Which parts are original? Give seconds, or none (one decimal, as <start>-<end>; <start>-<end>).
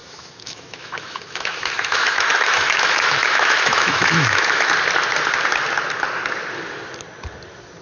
4.7-7.8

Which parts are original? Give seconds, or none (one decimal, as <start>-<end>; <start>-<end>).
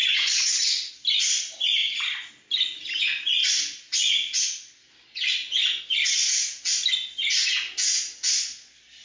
0.9-1.8; 2.3-9.0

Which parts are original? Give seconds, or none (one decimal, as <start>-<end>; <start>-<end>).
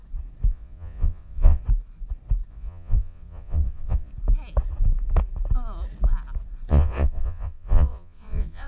0.0-0.5; 1.6-2.5; 4.1-6.7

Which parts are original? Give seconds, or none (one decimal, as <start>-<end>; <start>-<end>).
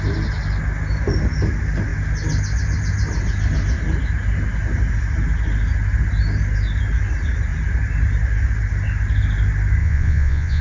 0.0-9.8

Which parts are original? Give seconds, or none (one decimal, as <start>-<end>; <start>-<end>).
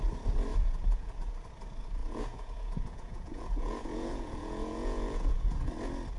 0.0-0.5; 1.3-2.0; 5.7-6.2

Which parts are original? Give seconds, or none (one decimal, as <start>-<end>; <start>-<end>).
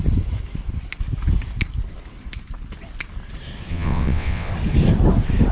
0.0-3.7; 4.5-5.5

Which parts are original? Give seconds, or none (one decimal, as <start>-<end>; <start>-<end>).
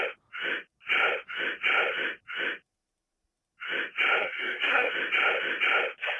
0.0-4.2; 4.9-6.2